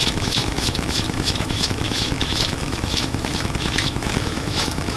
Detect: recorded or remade remade